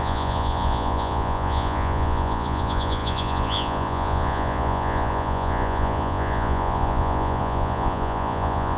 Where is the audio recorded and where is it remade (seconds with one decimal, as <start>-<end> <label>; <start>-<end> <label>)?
0.0-8.8 remade